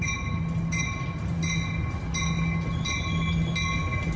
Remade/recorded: recorded